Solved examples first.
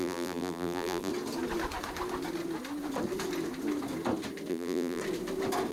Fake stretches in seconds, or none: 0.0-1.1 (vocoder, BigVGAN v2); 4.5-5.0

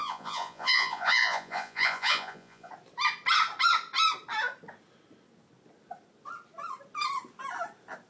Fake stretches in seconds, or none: 0.0-2.7 (vocoder, Vocos)

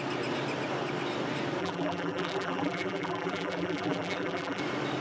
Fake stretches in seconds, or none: 1.6-4.6 (vocoder, BigVGAN v2)

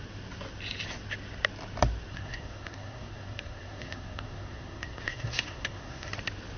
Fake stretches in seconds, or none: 2.1-6.1 (codec, SNAC)

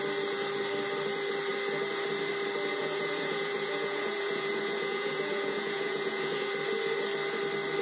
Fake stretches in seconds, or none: 2.7-6.5 (vocoder, Vocos)